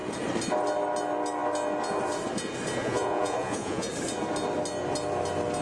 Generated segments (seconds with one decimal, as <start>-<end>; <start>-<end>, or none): 2.8-3.9